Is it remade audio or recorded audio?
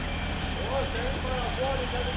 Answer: recorded